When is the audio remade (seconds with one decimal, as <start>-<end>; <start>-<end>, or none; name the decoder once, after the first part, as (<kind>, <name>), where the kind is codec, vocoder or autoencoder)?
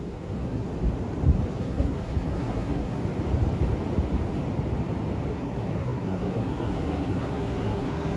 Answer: 0.0-0.7 (codec, SNAC); 1.5-3.0; 5.3-8.2